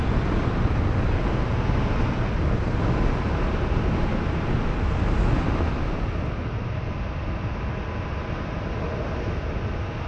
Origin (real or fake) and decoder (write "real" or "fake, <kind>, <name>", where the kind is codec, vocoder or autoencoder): real